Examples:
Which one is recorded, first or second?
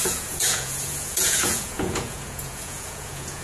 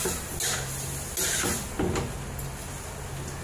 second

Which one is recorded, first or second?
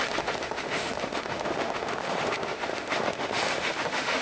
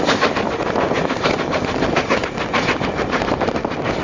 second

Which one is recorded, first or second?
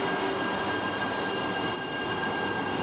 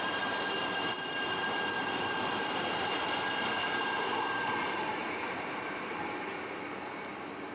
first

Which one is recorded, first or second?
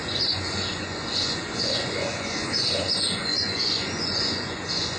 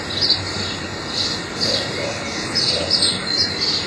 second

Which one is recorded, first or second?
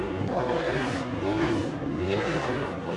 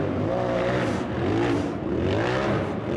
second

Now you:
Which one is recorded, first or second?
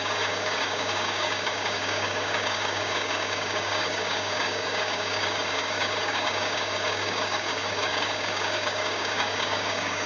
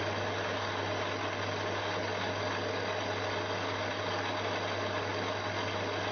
second